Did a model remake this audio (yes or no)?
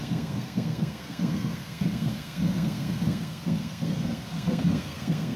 yes